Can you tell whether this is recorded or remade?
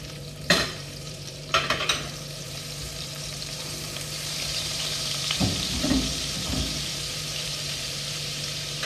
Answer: remade